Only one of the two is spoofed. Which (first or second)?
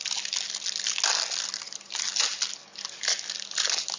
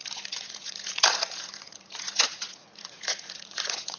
second